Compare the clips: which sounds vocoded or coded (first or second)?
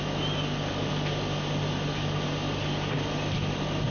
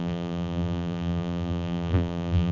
second